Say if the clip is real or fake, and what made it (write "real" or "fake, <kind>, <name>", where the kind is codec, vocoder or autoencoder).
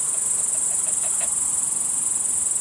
real